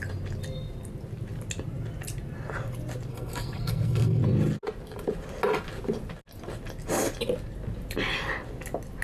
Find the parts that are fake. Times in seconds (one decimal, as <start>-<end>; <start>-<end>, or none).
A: 3.1-4.2